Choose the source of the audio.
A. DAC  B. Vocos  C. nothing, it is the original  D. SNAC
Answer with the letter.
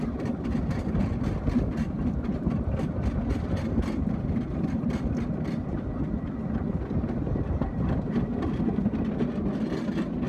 C